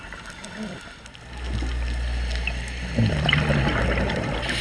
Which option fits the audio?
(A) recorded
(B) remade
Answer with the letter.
A